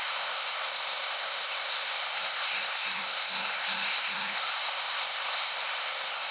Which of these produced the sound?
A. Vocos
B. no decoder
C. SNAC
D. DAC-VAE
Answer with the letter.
C